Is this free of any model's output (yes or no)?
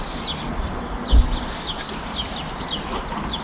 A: yes